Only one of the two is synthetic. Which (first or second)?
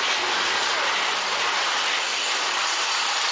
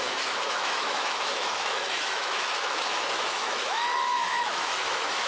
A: second